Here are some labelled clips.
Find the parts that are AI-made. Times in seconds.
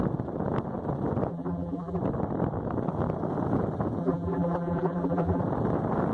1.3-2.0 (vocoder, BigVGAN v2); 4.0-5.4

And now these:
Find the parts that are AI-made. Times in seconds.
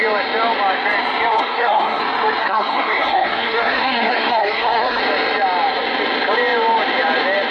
1.3-2.0 (codec, SNAC); 2.4-5.0